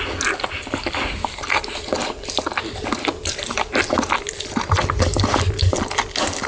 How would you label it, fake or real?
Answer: real